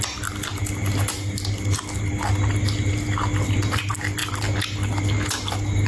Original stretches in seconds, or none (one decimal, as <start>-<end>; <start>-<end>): 0.0-5.9